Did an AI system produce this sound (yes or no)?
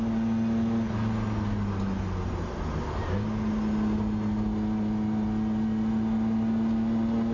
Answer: no